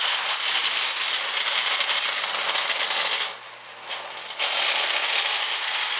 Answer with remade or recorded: recorded